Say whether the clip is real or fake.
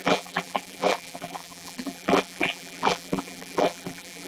fake